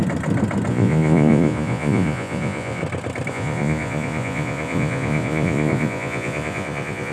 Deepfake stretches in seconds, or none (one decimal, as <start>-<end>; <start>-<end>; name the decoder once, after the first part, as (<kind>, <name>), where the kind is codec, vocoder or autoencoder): 0.7-2.8 (vocoder, Vocos); 3.3-7.1